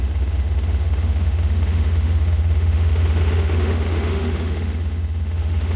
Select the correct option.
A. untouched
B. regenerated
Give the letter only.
B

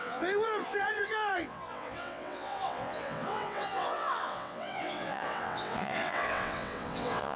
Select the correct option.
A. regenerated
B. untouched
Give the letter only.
A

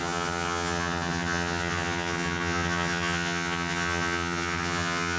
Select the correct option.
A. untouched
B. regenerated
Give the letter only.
B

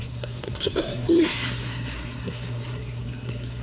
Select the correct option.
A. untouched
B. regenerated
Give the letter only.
B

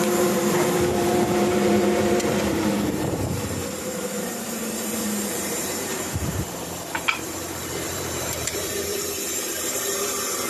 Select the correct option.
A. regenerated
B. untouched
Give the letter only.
A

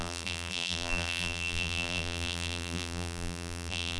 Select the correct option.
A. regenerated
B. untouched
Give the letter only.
A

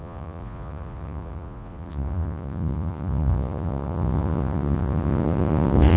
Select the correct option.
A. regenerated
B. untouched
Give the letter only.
A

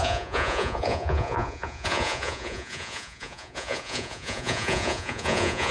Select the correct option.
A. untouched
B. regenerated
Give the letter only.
B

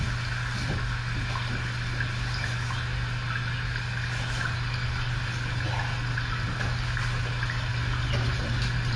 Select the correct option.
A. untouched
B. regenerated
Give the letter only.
A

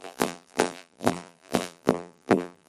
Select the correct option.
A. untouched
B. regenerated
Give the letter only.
B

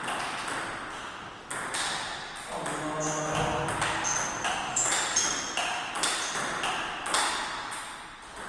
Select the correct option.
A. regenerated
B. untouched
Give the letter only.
B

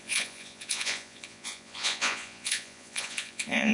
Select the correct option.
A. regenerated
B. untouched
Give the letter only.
A